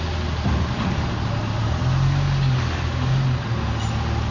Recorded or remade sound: recorded